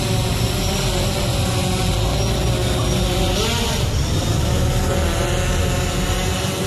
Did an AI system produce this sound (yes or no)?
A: no